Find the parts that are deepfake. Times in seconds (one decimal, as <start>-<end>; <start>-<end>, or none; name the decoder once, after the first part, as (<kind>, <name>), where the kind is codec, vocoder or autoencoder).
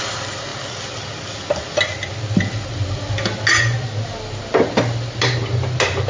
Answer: none